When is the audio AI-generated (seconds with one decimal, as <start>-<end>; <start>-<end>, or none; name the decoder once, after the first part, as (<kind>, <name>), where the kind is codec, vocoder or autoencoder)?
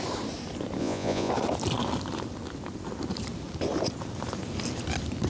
0.8-1.3 (vocoder, Vocos)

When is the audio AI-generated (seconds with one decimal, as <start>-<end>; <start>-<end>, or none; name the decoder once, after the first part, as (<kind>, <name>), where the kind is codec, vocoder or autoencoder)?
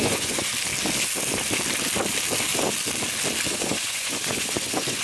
0.0-0.5 (vocoder, Vocos); 3.5-5.0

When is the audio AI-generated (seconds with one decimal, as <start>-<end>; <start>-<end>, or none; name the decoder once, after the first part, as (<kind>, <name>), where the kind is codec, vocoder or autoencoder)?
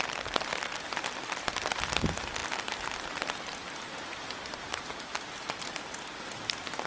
none